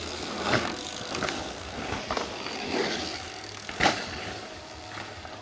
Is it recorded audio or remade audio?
remade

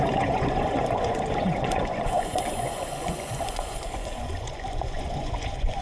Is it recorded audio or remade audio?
remade